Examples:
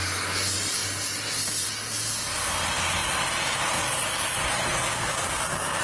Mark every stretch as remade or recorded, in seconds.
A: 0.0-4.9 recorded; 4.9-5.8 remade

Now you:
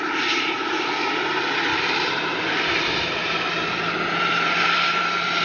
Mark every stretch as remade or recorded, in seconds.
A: 0.0-3.2 remade; 3.2-4.5 recorded; 4.5-5.4 remade